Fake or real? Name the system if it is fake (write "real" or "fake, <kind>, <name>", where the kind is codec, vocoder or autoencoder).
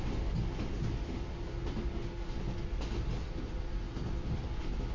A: real